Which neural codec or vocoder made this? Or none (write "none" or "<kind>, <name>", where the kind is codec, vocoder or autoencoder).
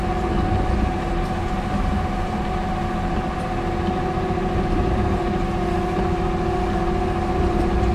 none